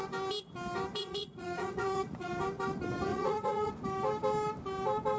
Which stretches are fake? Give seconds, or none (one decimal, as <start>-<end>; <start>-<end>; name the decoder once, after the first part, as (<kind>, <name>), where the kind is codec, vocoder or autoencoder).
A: 1.0-2.3 (vocoder, Vocos); 3.1-3.7